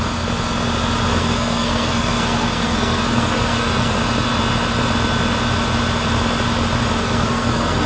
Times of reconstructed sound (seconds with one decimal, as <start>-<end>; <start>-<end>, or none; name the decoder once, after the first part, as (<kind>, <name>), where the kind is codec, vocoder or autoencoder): 1.1-4.0 (codec, SNAC); 7.0-7.9